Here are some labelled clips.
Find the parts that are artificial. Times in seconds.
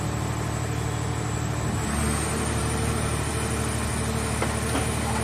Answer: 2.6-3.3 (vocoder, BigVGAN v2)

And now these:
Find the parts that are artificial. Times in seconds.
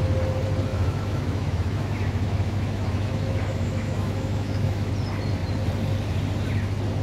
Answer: 0.7-4.9 (autoencoder, DAC-VAE)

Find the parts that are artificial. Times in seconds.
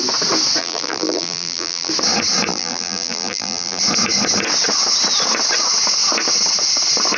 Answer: 0.6-1.9 (vocoder, BigVGAN v2); 2.5-3.8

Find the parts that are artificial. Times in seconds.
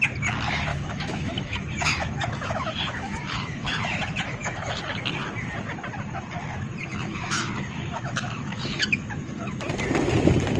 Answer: 0.7-4.8 (autoencoder, DAC-VAE); 6.9-9.6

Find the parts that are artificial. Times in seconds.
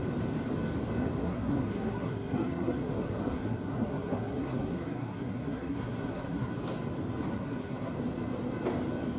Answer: 1.2-6.5 (codec, SNAC); 7.3-7.9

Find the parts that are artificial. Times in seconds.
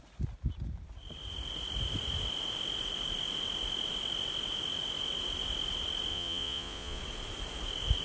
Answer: 6.1-7.0 (vocoder, Vocos)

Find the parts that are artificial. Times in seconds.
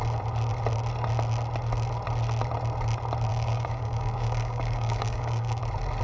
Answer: 3.3-5.6 (codec, DAC)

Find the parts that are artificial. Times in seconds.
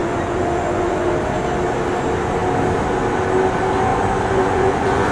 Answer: 0.0-1.1 (vocoder, Vocos); 3.9-5.1